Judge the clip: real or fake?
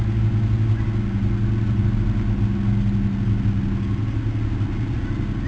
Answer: real